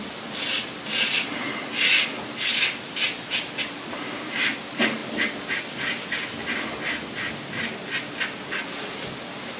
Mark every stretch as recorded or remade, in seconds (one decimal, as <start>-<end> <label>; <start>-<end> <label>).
0.0-9.6 recorded